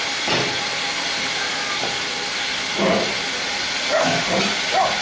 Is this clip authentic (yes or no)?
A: yes